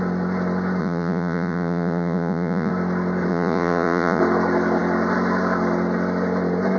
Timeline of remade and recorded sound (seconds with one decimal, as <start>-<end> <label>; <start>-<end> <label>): 0.0-0.8 recorded; 0.8-2.7 remade; 2.7-3.3 recorded; 3.3-4.2 remade; 4.2-6.8 recorded